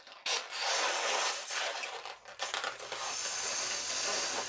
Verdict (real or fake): real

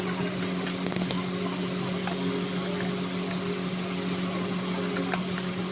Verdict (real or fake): real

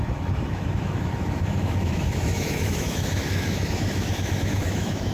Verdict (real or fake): fake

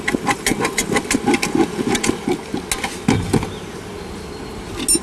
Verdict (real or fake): real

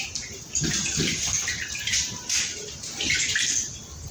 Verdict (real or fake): real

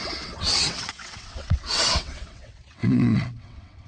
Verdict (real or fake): fake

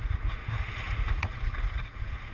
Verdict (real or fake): fake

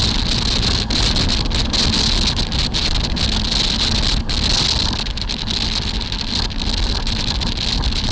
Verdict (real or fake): real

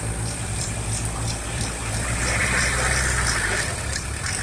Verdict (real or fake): fake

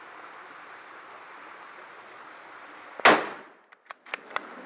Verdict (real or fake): real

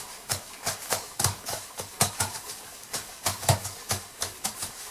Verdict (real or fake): fake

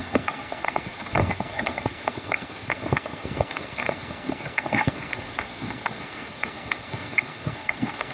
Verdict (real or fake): fake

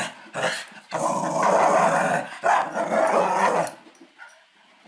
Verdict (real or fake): real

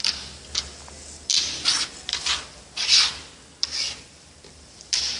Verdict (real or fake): real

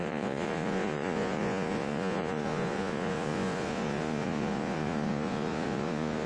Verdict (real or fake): fake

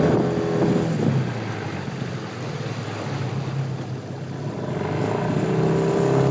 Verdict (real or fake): real